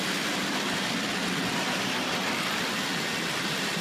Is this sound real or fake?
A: real